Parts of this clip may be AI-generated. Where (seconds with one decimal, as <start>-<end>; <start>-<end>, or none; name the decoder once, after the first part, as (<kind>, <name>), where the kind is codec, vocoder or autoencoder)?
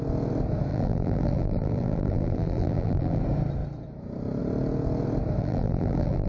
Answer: 0.7-3.2 (vocoder, BigVGAN v2); 5.4-6.3